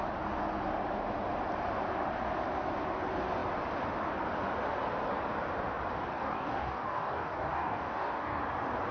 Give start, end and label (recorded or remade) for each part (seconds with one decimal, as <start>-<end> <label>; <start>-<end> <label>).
0.0-6.1 recorded; 6.1-8.4 remade; 8.4-8.9 recorded

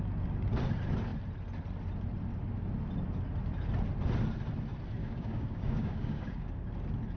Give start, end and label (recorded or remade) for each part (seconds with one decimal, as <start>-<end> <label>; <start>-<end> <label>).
0.0-5.0 recorded; 5.0-6.5 remade; 6.5-7.2 recorded

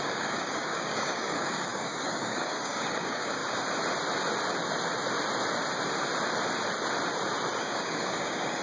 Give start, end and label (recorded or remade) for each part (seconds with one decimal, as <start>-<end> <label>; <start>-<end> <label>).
0.0-3.4 remade; 3.4-7.6 recorded; 7.6-8.6 remade

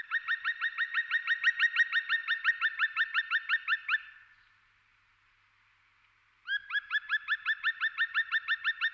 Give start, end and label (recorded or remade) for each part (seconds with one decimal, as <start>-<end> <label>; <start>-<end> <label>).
0.0-8.9 recorded

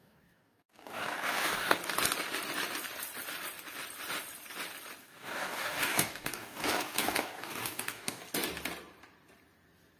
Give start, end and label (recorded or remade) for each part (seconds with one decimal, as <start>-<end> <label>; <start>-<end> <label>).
0.0-1.8 remade; 1.8-5.0 recorded; 5.0-8.2 remade; 8.2-10.0 recorded